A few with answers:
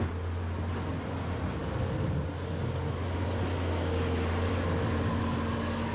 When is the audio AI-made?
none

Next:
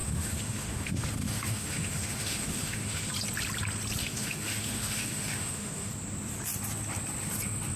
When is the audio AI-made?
0.0-3.1 (autoencoder, DAC-VAE); 4.0-5.9

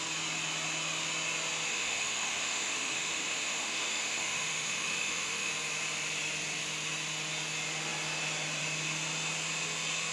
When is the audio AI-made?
1.7-5.5 (autoencoder, DAC-VAE)

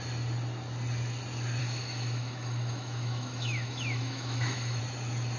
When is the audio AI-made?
1.6-4.8 (autoencoder, DAC-VAE)

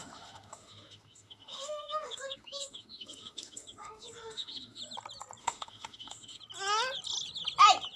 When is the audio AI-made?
0.0-4.8 (autoencoder, DAC-VAE); 5.4-6.4